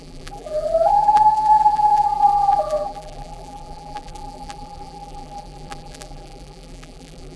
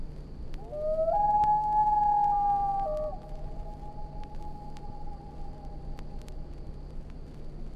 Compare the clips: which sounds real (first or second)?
second